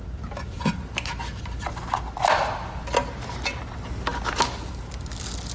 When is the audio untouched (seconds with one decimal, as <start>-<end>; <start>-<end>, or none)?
0.0-5.5